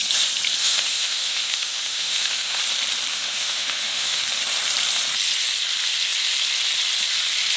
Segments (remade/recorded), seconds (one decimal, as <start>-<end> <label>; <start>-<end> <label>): 0.0-0.6 recorded; 0.6-2.6 remade; 2.6-3.1 recorded; 3.1-4.2 remade; 4.2-7.6 recorded